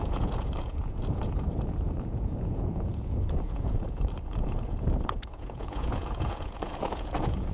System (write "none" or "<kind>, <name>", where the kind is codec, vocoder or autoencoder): vocoder, Vocos